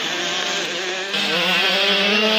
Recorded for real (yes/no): yes